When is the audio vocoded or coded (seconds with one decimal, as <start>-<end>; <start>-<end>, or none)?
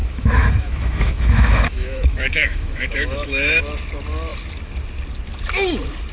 0.0-3.6